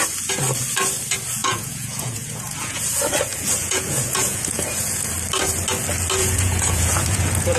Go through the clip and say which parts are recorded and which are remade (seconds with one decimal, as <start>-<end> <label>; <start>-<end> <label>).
0.0-1.4 recorded; 1.4-2.8 remade; 2.8-3.3 recorded; 3.3-5.1 remade; 5.1-6.2 recorded; 6.2-7.6 remade